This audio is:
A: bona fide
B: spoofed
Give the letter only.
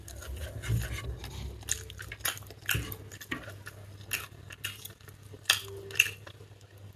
A